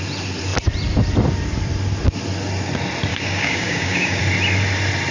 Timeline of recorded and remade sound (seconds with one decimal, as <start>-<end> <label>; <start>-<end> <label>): 0.0-3.1 recorded; 3.1-4.2 remade; 4.2-5.1 recorded

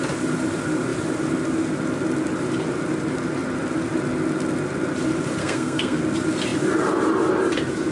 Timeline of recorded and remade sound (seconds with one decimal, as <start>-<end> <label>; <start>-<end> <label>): 0.0-5.4 recorded; 5.4-6.0 remade; 6.0-7.9 recorded